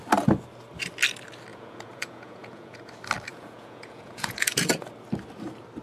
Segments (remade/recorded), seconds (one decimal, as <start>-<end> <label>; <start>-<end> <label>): 0.0-1.5 recorded; 1.5-2.8 remade; 2.8-3.3 recorded; 3.3-4.7 remade; 4.7-5.8 recorded